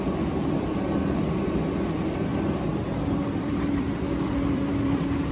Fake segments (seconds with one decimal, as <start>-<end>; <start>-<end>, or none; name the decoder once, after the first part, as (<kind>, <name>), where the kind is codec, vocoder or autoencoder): 0.0-5.3 (vocoder, BigVGAN v2)

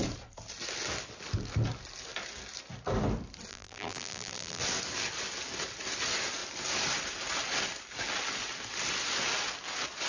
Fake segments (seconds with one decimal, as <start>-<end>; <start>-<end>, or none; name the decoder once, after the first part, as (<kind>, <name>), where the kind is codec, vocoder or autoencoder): 3.5-4.6 (vocoder, BigVGAN v2)

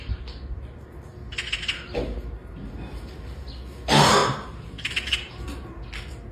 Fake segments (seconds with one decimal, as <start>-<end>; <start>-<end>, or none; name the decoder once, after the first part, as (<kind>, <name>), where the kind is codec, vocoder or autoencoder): 2.4-3.4 (vocoder, BigVGAN v2); 4.2-4.9

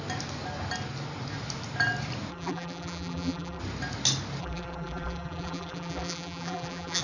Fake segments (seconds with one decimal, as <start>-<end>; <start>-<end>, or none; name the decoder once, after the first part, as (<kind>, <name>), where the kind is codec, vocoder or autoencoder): 2.3-3.6 (vocoder, BigVGAN v2); 4.4-7.0